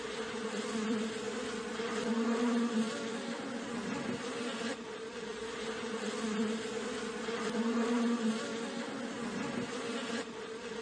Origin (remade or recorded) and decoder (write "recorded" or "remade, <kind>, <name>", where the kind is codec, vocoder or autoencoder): remade, vocoder, BigVGAN v2